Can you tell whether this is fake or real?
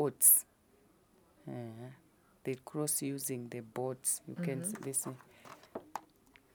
real